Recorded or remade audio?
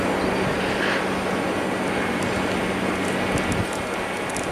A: recorded